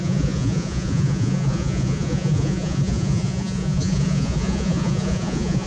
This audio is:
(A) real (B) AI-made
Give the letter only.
B